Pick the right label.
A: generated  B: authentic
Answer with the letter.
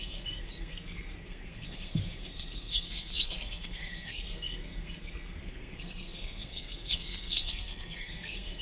A